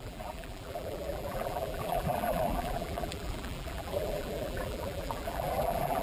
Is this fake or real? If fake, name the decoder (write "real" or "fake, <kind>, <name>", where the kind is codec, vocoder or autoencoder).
fake, vocoder, BigVGAN v2